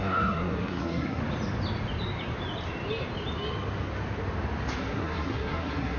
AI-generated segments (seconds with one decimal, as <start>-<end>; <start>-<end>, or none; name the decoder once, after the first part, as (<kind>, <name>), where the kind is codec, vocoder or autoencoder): 0.0-1.2 (codec, SNAC); 4.8-6.0